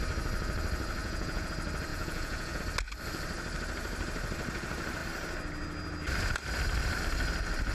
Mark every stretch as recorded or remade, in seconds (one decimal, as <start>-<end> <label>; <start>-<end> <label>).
0.0-1.0 recorded; 1.0-1.5 remade; 1.5-1.9 recorded; 1.9-2.6 remade; 2.6-7.7 recorded